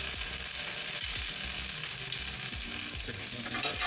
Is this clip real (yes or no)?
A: yes